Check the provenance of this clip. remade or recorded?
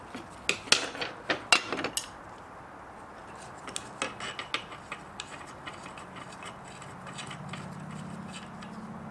recorded